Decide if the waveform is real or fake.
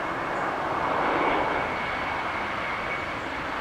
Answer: real